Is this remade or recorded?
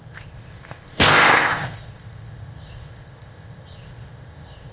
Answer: remade